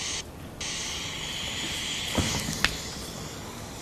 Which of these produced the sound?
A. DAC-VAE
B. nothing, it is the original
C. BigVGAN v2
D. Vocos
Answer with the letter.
B